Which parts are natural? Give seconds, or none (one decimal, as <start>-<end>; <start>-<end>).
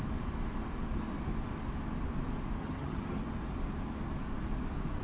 0.0-2.6; 3.2-5.0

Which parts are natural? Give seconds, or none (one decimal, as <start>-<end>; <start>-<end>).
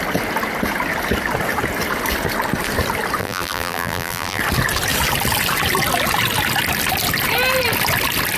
0.0-3.2; 4.4-8.4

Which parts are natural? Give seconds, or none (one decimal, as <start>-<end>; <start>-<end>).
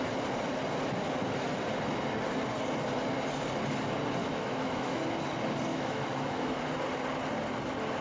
0.0-4.2; 5.0-5.7; 6.6-8.0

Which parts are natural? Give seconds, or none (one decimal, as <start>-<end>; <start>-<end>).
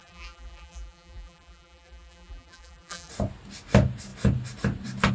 3.1-5.1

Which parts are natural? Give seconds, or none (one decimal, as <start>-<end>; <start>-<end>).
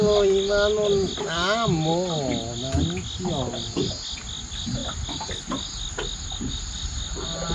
0.0-7.5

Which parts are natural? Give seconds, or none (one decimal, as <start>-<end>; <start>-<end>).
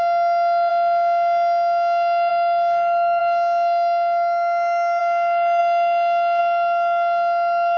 0.7-2.3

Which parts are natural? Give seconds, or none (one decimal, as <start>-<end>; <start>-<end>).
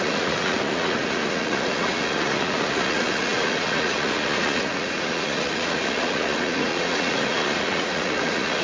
none